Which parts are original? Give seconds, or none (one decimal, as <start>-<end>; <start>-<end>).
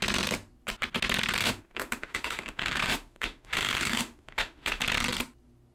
0.0-1.4; 4.8-5.7